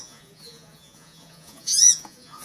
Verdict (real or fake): fake